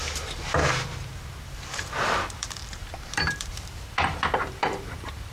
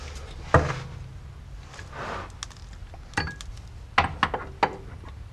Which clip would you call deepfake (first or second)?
first